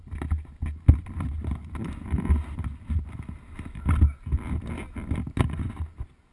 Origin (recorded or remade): recorded